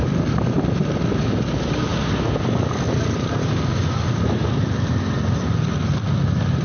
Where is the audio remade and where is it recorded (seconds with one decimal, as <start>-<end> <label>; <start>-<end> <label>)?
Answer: 0.0-6.6 recorded